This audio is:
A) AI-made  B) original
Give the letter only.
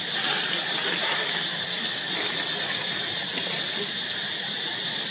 B